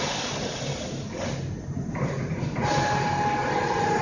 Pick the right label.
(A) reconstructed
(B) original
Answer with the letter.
B